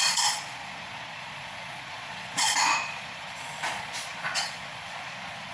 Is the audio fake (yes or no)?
yes